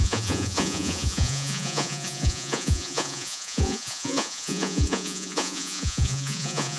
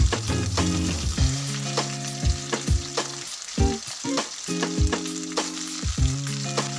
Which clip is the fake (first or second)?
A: first